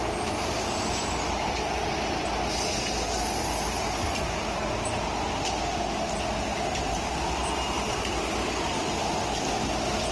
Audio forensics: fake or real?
real